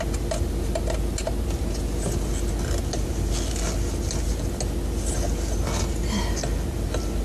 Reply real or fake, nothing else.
real